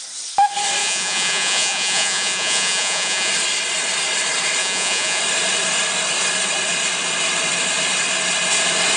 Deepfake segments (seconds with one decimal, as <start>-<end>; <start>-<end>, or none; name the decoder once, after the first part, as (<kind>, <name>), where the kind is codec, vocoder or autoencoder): 0.8-3.3 (vocoder, Vocos); 4.6-5.2